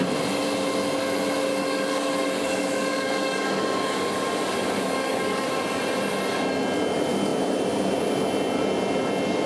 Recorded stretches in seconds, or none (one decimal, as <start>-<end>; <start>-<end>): 0.0-1.5; 5.5-9.5

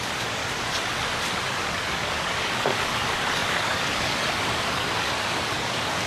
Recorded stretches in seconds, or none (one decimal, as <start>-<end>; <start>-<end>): 0.4-1.5

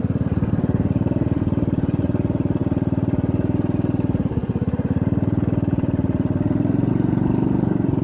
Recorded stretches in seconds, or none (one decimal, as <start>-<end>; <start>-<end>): 0.0-8.0

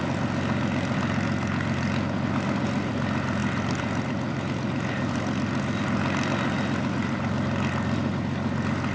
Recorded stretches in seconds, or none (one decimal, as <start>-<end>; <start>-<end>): 0.0-8.9

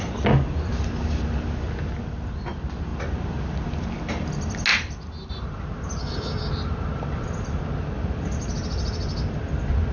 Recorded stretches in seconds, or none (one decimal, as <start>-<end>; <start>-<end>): 0.0-6.0; 6.5-9.9

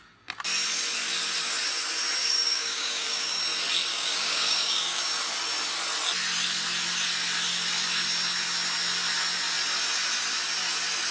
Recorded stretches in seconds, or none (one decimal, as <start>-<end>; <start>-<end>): 0.0-2.2; 3.4-3.9; 5.0-11.1

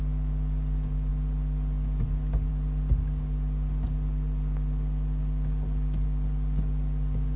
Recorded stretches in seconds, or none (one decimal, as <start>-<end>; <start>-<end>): 0.0-7.4

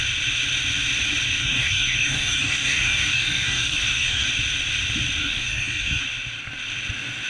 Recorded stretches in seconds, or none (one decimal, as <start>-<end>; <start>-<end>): 0.0-1.4; 4.3-5.2; 6.0-7.3